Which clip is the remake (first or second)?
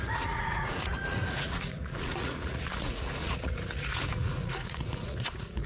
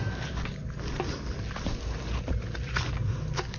first